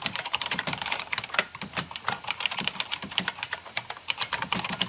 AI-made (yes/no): yes